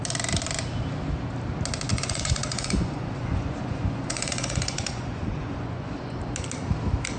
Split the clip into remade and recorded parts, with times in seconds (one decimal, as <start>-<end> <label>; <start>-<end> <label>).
0.0-1.9 recorded; 1.9-6.2 remade; 6.2-7.2 recorded